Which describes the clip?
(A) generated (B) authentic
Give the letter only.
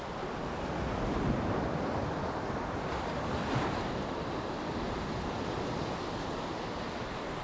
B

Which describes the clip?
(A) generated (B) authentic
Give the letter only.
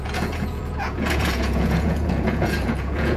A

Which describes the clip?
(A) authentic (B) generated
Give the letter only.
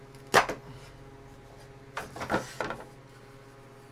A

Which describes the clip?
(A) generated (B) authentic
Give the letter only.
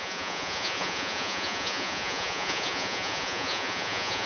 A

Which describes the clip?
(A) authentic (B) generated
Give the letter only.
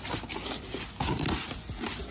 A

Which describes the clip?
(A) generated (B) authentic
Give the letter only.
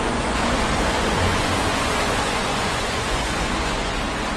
A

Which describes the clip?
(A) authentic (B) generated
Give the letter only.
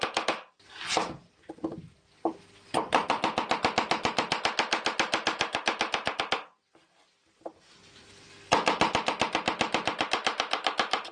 A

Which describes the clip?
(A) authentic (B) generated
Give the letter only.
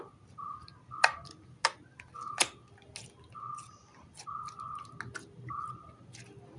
A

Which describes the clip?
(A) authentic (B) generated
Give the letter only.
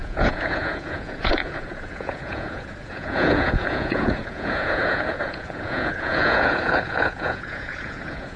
B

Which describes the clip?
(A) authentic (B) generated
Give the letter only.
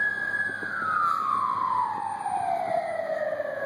A